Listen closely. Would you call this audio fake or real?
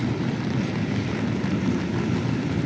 fake